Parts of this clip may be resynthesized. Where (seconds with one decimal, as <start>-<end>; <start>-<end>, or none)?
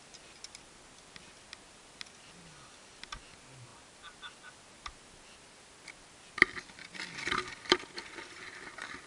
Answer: none